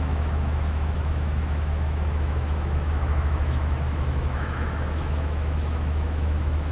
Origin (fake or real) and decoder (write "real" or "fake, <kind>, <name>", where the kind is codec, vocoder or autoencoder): fake, autoencoder, DAC-VAE